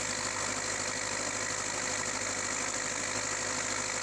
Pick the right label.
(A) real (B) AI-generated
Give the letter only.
A